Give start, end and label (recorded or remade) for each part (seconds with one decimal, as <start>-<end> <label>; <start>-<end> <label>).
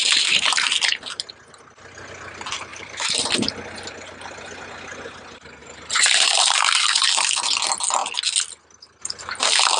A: 0.0-1.3 remade; 1.3-2.7 recorded; 2.7-3.5 remade; 3.5-5.6 recorded; 5.6-7.3 remade; 7.3-9.8 recorded